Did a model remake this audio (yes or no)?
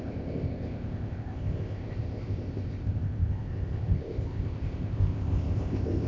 yes